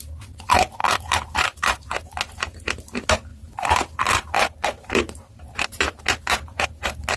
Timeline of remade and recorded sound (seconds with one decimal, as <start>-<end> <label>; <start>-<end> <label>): 0.0-0.8 recorded; 0.8-2.2 remade; 2.2-3.3 recorded; 3.3-7.2 remade